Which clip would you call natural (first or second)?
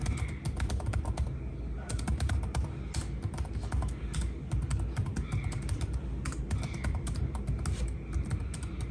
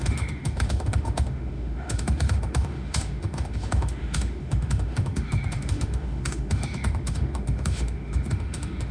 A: first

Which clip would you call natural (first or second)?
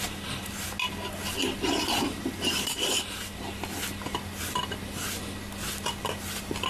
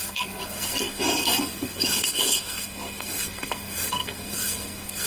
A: first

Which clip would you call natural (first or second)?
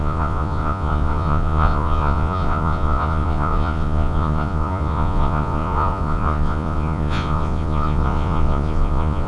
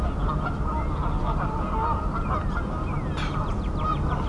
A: second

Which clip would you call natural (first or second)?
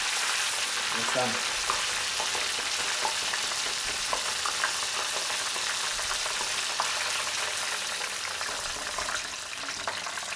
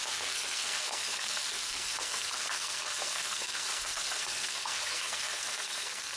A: first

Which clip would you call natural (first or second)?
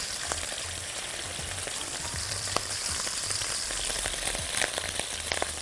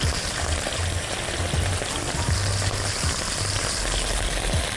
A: second